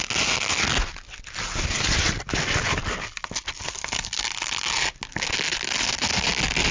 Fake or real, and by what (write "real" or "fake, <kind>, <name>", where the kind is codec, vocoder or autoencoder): real